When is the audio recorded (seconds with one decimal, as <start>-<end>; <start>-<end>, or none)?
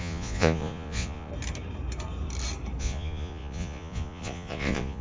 1.3-2.8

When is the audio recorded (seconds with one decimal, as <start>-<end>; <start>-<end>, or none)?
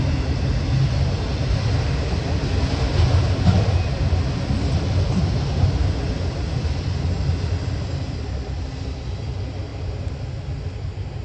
0.0-11.2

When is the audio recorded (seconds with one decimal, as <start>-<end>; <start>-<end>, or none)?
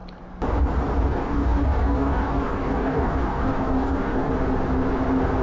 0.0-1.1; 4.3-5.4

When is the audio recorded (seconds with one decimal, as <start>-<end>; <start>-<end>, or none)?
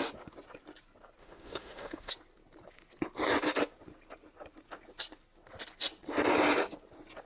0.0-1.2; 2.1-7.3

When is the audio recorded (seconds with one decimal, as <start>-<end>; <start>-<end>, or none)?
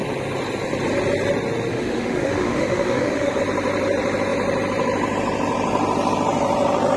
0.0-1.7; 3.4-7.0